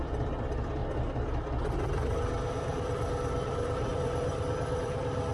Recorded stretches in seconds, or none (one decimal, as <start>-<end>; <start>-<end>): 0.8-1.7